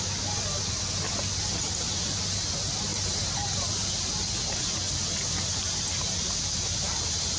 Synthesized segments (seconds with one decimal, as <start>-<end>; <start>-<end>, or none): none